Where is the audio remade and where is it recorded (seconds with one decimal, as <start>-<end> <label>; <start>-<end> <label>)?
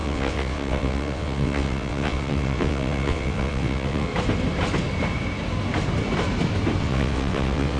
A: 0.0-4.1 remade; 4.1-6.8 recorded; 6.8-7.8 remade